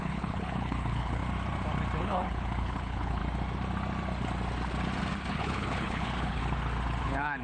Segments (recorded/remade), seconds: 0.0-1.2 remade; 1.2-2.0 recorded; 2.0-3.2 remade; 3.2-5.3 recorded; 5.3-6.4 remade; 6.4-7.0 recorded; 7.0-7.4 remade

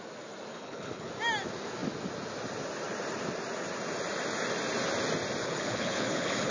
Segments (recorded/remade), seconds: 0.0-0.5 recorded; 0.5-1.1 remade; 1.1-5.4 recorded; 5.4-6.5 remade

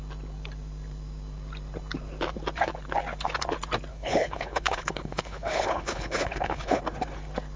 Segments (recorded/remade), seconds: 0.0-3.9 recorded; 3.9-6.8 remade; 6.8-7.6 recorded

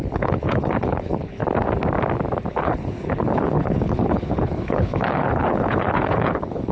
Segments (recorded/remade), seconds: 0.0-1.4 remade; 1.4-2.5 recorded; 2.5-6.7 remade

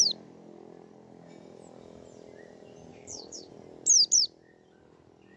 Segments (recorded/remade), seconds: 0.0-2.9 recorded; 2.9-3.5 remade; 3.5-5.4 recorded